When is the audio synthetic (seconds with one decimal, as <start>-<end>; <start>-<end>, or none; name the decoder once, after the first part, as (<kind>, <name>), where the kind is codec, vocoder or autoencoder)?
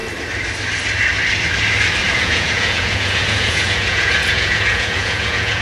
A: 2.1-5.6 (vocoder, Vocos)